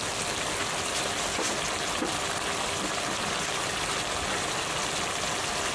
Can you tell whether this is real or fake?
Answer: real